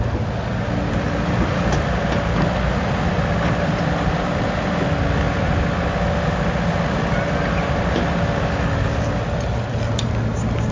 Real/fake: real